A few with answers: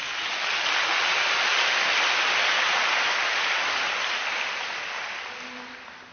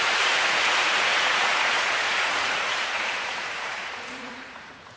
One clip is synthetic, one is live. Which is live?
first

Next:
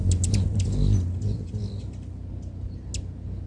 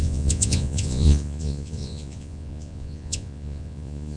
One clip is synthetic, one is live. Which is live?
first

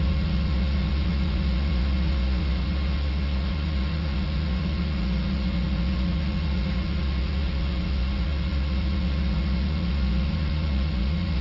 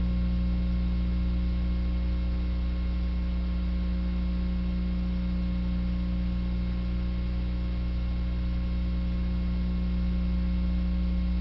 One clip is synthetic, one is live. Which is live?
second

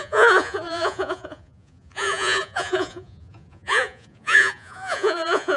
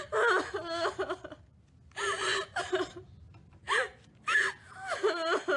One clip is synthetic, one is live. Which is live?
second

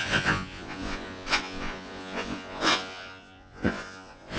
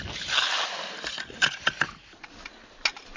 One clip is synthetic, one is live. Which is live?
second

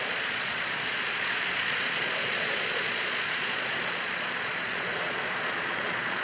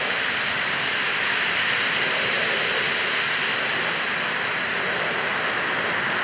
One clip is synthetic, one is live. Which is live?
second